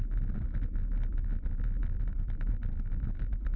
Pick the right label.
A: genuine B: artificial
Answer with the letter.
A